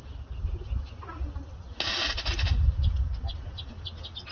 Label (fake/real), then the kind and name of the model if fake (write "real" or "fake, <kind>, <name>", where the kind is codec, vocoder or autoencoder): real